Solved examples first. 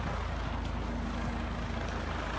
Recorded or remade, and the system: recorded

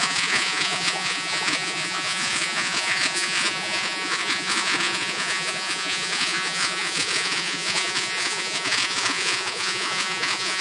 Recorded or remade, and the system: remade, vocoder, Vocos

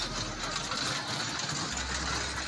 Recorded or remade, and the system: recorded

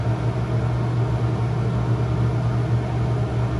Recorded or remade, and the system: recorded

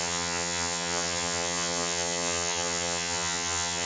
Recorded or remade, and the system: remade, vocoder, HiFi-GAN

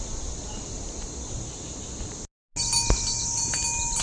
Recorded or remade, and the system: recorded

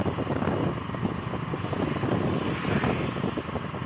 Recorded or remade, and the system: recorded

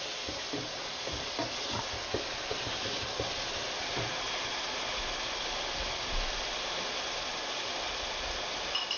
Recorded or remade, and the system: recorded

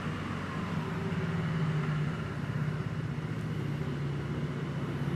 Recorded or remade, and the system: recorded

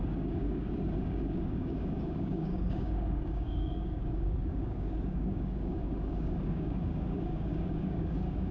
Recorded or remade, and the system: remade, codec, DAC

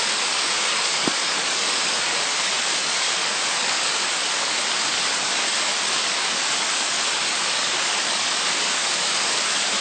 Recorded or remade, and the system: remade, codec, DAC